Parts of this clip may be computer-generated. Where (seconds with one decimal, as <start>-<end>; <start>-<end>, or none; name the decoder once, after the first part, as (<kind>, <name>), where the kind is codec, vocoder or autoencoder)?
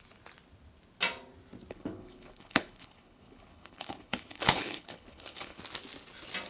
1.7-5.6 (codec, HILCodec)